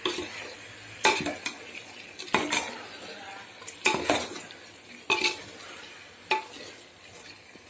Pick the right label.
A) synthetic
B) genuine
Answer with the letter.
B